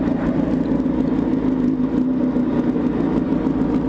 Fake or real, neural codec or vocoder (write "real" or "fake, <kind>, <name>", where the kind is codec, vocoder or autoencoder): real